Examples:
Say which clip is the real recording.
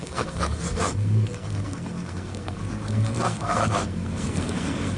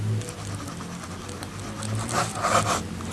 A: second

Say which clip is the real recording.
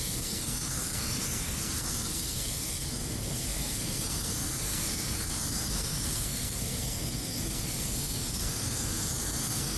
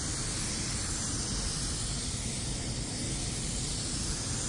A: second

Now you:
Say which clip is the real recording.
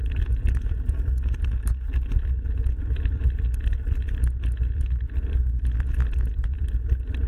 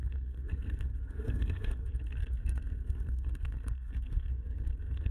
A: first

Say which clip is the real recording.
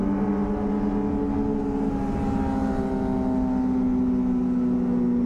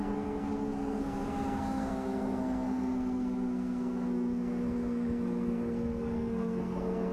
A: first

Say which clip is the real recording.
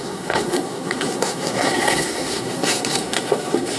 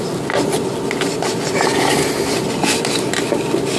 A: second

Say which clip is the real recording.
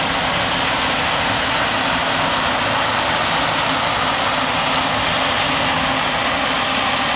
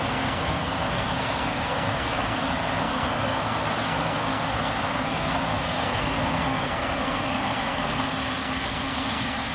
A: first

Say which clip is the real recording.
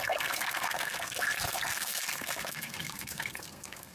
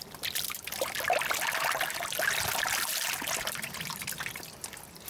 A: second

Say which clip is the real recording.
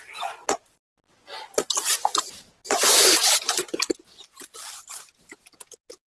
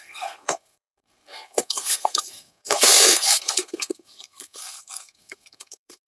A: first